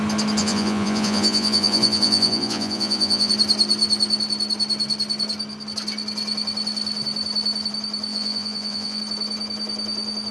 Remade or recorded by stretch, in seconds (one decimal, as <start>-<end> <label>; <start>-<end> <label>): 0.0-0.4 recorded; 0.4-3.3 remade; 3.3-8.1 recorded; 8.1-9.0 remade; 9.0-10.3 recorded